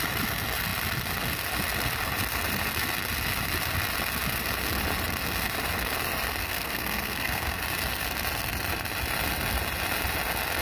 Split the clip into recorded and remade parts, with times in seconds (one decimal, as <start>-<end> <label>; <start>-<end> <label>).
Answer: 0.0-6.4 recorded; 6.4-7.6 remade; 7.6-10.6 recorded